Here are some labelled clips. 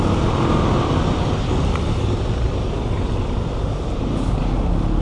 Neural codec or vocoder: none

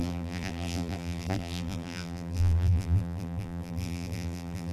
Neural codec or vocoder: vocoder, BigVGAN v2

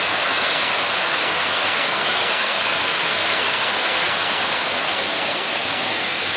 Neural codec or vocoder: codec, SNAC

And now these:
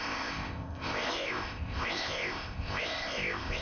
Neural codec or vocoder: codec, ZipCodec